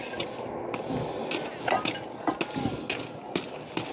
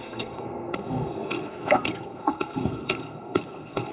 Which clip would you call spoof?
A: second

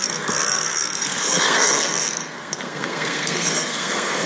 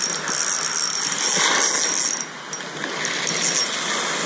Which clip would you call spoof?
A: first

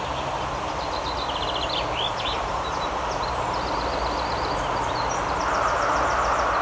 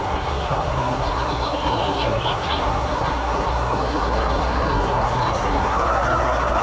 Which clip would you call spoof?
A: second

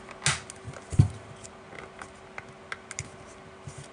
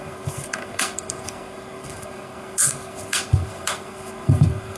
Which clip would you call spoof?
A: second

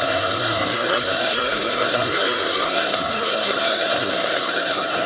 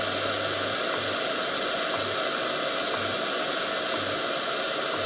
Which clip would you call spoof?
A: first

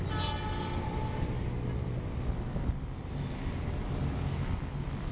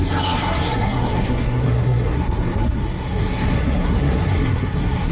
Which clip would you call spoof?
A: second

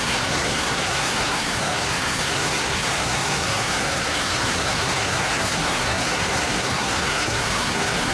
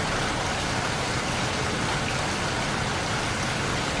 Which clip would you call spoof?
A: first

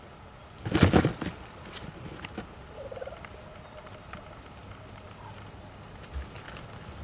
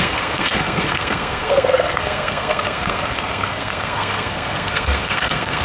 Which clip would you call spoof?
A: second